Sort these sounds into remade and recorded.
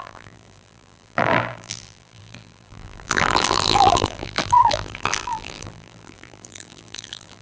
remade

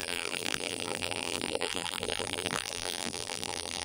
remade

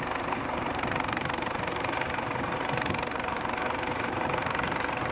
remade